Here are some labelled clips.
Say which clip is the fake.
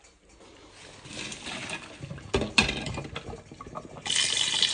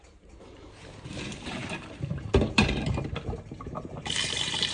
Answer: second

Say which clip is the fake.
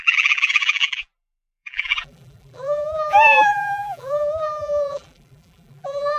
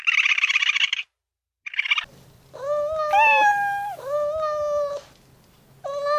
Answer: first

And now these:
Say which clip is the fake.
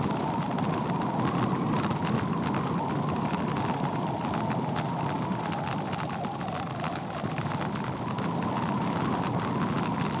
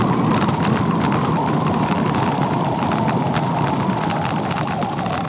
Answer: second